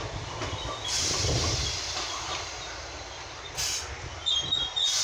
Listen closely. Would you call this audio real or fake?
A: real